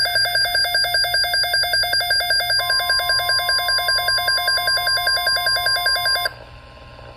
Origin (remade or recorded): recorded